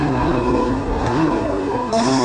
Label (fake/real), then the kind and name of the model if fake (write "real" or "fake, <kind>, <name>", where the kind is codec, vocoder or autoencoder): fake, codec, SNAC